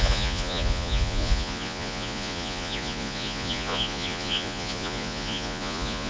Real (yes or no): no